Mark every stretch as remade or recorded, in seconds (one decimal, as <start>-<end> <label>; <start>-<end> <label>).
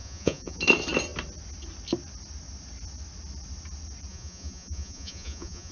0.0-0.6 remade; 0.6-4.1 recorded; 4.1-5.7 remade